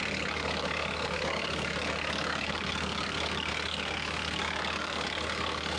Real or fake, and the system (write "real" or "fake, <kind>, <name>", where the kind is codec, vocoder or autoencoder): fake, codec, DAC